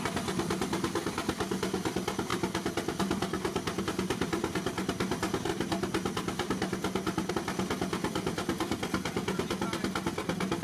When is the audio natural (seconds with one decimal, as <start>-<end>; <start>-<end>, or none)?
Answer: 0.0-2.3; 3.8-10.6